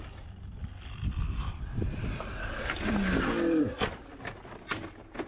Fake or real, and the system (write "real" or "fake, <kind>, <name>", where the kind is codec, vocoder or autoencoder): real